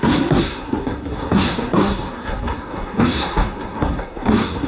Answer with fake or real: fake